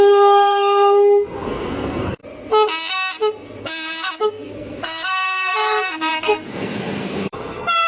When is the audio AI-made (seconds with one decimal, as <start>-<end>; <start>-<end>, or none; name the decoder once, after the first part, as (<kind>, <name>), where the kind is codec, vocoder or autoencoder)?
0.0-2.2 (codec, SNAC); 3.6-7.9